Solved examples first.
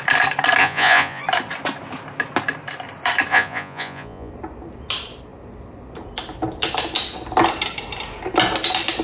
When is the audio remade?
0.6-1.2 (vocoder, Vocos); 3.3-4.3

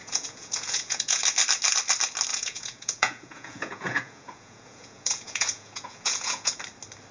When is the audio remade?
0.0-1.2 (vocoder, Vocos); 2.3-6.6

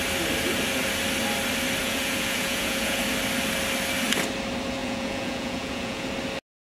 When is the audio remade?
1.8-3.0 (vocoder, Vocos); 4.8-6.1

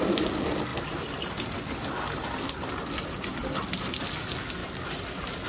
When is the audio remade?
none

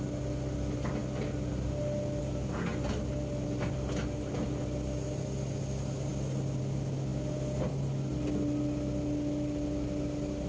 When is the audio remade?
none

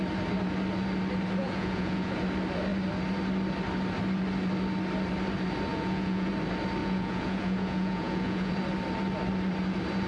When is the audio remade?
1.4-2.1 (vocoder, Vocos); 5.7-6.3; 6.8-8.5

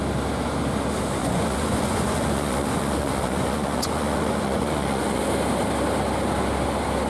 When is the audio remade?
1.2-5.2 (vocoder, Vocos)

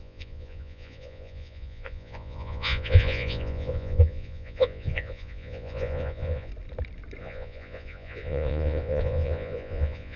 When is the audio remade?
0.0-6.5 (vocoder, Vocos); 7.2-10.2